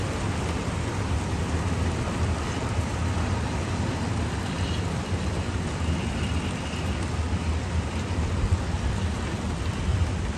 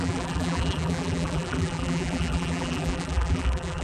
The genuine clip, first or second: first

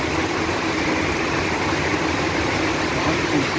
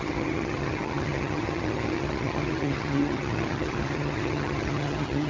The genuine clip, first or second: first